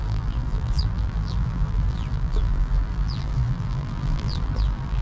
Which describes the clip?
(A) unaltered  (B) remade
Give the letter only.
B